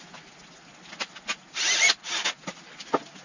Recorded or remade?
recorded